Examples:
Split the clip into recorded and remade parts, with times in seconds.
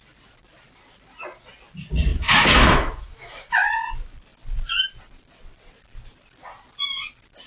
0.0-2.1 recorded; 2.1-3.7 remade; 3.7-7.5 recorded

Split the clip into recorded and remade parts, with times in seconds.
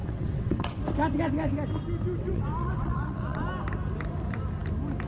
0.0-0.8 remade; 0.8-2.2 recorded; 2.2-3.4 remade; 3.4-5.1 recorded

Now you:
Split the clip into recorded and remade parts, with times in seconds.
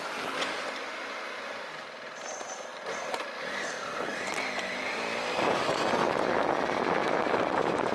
0.0-2.7 recorded; 2.7-5.9 remade; 5.9-7.0 recorded; 7.0-7.9 remade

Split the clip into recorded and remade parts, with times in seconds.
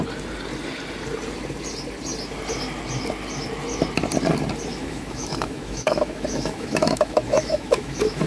0.0-4.7 recorded; 4.7-8.3 remade